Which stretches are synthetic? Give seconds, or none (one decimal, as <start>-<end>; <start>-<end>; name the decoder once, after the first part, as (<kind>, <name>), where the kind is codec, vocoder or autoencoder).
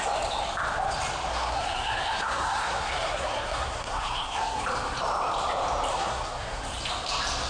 1.3-4.6 (codec, SNAC); 5.9-6.6